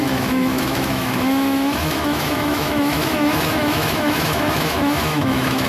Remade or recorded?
remade